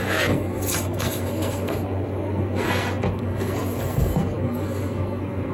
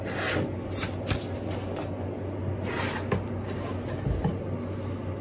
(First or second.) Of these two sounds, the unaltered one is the second